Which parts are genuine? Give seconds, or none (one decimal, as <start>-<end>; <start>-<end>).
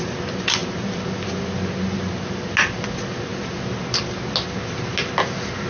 0.0-5.7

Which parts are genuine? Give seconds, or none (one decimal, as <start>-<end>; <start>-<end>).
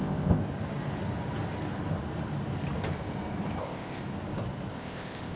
0.4-3.6; 4.0-4.7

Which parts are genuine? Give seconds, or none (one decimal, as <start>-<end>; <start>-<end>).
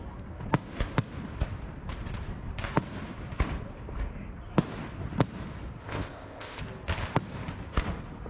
0.0-5.8; 6.6-8.3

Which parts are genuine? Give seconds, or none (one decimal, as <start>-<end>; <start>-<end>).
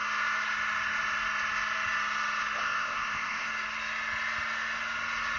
0.0-2.6; 3.5-5.4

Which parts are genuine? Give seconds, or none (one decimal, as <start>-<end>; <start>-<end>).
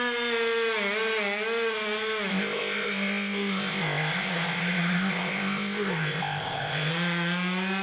0.0-2.3; 6.9-7.8